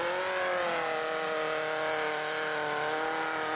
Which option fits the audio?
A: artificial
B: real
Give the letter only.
B